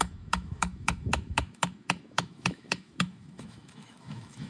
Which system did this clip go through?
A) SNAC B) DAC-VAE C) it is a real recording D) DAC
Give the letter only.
B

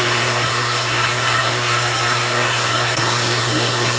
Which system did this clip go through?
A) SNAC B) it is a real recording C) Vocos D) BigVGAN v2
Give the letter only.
A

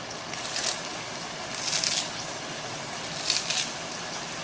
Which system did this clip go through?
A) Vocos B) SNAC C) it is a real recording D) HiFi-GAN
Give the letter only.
C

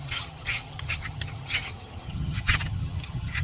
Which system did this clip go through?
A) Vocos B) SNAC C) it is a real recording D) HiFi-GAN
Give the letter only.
D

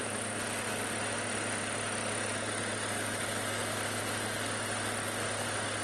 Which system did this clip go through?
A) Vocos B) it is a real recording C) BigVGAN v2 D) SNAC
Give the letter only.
B